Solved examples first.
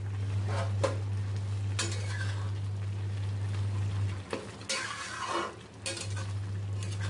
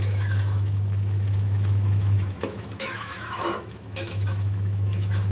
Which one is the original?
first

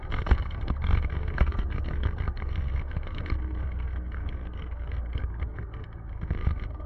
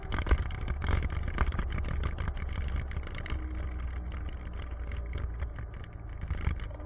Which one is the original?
second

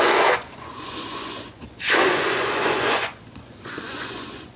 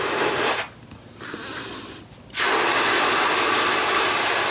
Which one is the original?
second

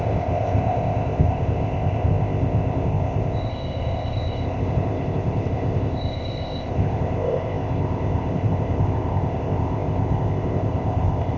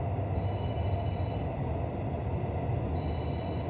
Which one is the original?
second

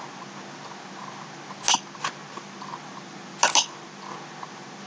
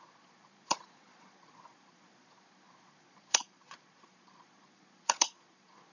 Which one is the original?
first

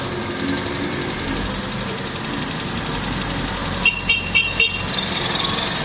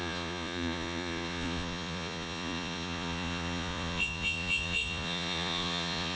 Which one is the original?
first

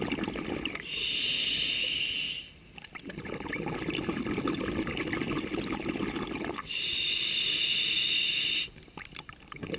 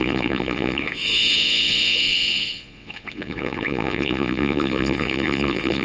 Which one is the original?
first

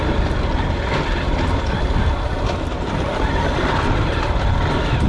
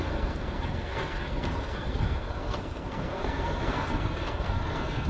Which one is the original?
first